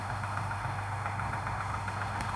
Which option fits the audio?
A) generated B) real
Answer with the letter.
A